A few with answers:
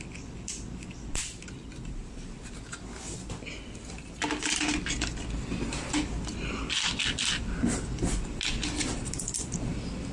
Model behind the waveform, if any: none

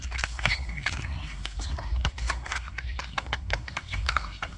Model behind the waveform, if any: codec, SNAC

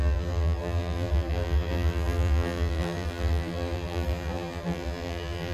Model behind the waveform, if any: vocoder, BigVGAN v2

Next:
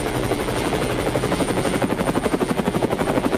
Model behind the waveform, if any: vocoder, BigVGAN v2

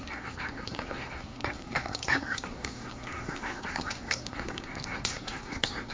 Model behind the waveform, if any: codec, SNAC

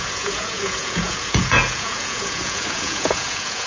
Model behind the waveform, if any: vocoder, Vocos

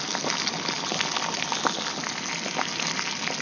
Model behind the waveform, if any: none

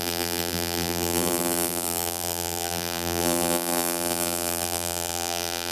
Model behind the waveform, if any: vocoder, BigVGAN v2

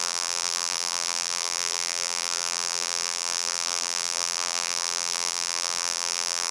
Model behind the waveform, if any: vocoder, BigVGAN v2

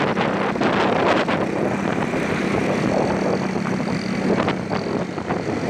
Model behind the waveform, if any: none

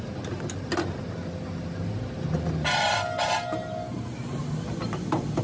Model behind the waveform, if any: none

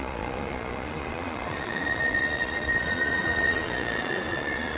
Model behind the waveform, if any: vocoder, Vocos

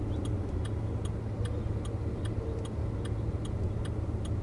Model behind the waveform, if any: none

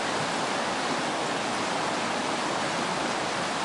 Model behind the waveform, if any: none